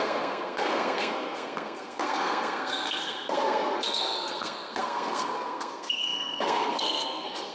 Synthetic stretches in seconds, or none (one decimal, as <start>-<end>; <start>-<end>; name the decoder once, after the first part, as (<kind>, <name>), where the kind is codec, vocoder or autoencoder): 0.0-7.5 (codec, SNAC)